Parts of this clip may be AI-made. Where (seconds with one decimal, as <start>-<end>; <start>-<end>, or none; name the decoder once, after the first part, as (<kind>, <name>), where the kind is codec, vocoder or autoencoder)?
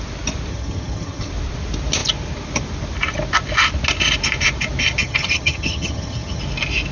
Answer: 0.5-1.3 (vocoder, HiFi-GAN); 5.0-6.4